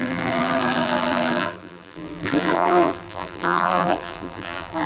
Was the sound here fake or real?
fake